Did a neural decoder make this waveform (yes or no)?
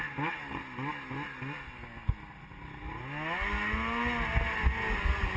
no